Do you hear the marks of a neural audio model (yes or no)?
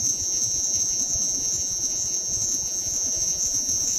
yes